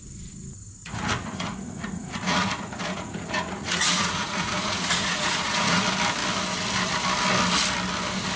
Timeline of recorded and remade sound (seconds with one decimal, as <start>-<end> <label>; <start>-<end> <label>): 0.0-0.8 recorded; 0.8-5.8 remade; 5.8-8.4 recorded